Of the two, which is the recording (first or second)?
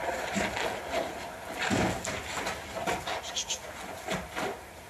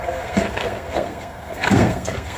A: first